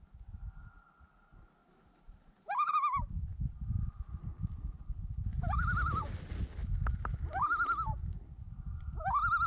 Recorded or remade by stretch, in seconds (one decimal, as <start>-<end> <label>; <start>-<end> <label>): 0.0-1.6 recorded; 1.6-2.7 remade; 2.7-5.3 recorded; 5.3-6.1 remade; 6.1-9.5 recorded